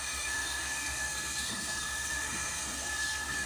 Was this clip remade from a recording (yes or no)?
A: yes